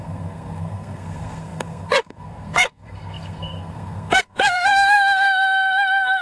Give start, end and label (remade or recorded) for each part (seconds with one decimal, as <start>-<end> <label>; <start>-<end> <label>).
0.0-6.2 remade